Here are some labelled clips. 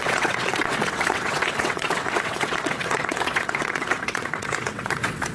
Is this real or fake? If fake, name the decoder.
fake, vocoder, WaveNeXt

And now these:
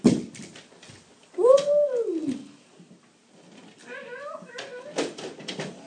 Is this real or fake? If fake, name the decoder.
real